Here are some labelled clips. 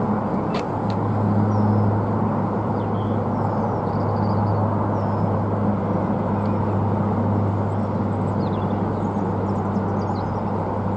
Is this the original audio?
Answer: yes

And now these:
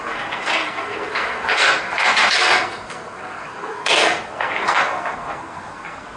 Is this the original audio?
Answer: no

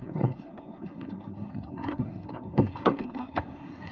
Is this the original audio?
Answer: no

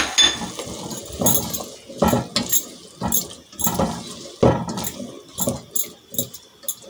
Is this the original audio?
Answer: yes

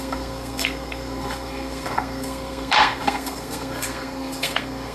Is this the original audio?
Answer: no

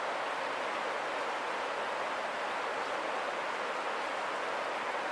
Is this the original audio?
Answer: yes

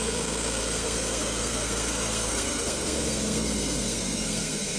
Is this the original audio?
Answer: no